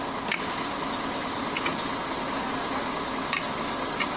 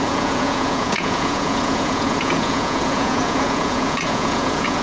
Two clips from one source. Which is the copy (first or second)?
second